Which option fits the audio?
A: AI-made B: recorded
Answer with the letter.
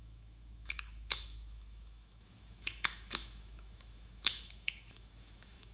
A